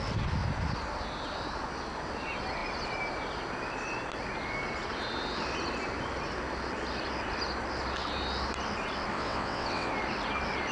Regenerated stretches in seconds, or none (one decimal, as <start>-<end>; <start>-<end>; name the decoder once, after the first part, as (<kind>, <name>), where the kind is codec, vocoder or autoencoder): 9.1-9.9 (vocoder, WaveNeXt)